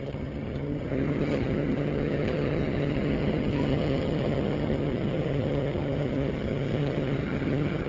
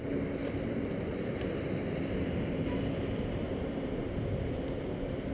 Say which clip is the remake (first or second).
first